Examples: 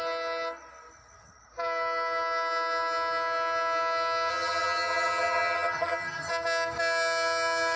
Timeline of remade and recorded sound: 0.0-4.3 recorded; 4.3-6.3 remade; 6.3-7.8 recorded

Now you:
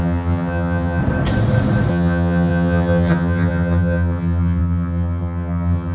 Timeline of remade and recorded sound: 0.0-1.0 remade; 1.0-1.9 recorded; 1.9-5.9 remade